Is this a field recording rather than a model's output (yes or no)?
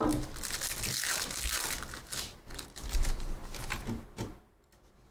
yes